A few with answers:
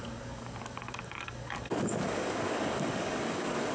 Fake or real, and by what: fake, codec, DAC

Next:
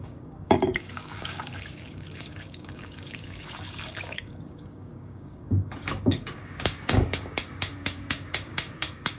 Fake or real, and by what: fake, codec, DAC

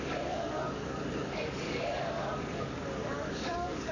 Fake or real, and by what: fake, codec, DAC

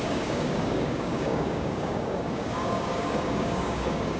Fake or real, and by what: fake, codec, DAC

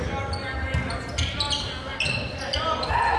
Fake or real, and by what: real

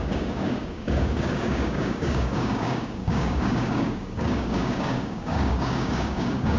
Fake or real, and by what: fake, codec, DAC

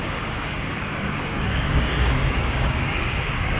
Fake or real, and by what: fake, codec, DAC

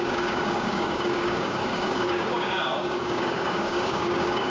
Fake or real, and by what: fake, codec, DAC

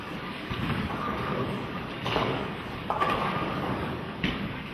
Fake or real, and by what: fake, codec, DAC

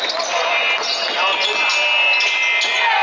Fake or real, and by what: real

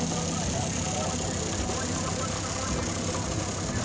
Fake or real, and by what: real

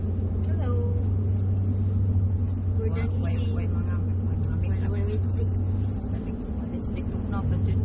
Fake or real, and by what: real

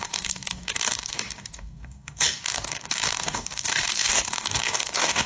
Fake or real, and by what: fake, codec, DAC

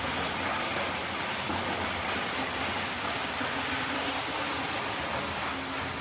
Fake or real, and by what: real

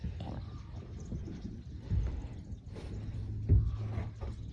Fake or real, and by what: real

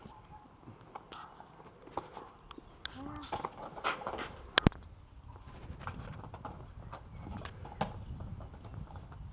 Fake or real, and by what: real